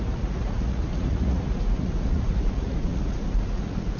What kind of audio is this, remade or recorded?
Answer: remade